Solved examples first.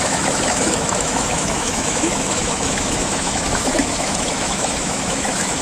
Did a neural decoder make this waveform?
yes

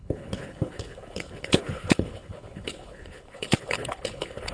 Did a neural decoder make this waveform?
yes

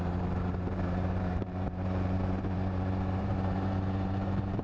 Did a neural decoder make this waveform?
yes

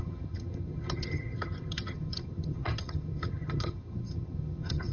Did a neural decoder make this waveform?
yes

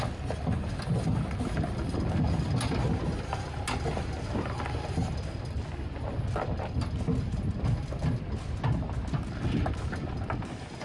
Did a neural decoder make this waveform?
no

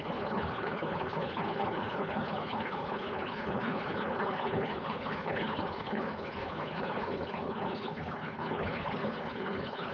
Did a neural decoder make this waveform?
yes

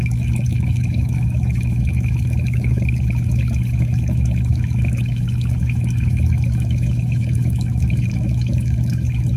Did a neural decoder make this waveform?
yes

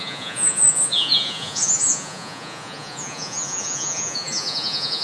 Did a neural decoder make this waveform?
yes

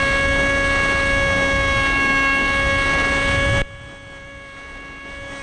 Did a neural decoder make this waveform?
no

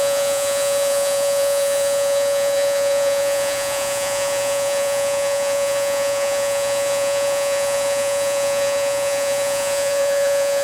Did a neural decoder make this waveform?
yes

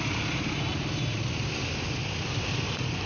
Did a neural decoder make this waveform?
no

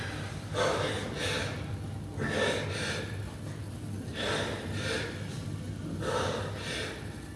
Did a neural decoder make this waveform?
no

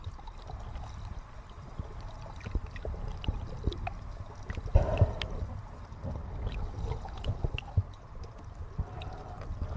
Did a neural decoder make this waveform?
no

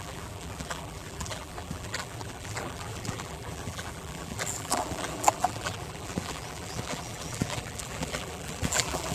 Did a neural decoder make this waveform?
yes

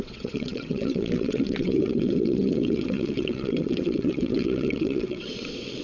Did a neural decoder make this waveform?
yes